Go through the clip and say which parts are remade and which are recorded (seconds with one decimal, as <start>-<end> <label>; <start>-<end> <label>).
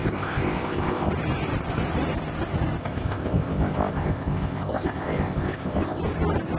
0.0-1.1 remade; 1.1-2.8 recorded; 2.8-6.0 remade; 6.0-6.6 recorded